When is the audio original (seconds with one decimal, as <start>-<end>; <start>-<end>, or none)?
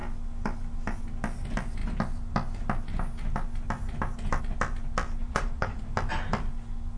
0.0-5.2; 5.8-7.0